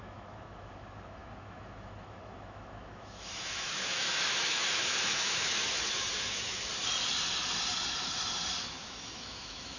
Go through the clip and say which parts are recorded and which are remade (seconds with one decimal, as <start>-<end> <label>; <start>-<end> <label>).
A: 0.0-6.7 remade; 6.7-8.6 recorded; 8.6-9.8 remade